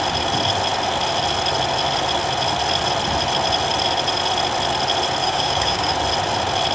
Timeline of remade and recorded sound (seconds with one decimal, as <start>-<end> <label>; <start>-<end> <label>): 0.0-5.2 recorded; 5.2-5.9 remade; 5.9-6.7 recorded